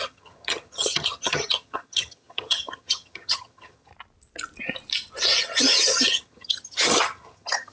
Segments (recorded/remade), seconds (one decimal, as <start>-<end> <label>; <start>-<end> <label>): 0.0-3.9 remade; 3.9-5.4 recorded; 5.4-7.7 remade